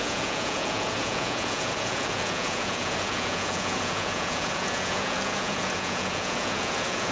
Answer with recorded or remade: remade